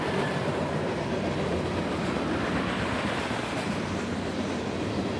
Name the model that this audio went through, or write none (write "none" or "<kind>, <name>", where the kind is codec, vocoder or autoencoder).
none